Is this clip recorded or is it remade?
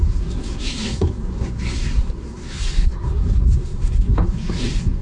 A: remade